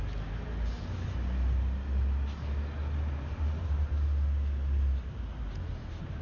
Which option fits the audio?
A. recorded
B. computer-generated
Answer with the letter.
A